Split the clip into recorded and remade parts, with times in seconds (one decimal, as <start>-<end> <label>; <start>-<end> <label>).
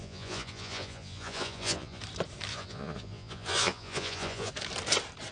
0.0-2.0 remade; 2.0-2.5 recorded; 2.5-4.5 remade; 4.5-5.3 recorded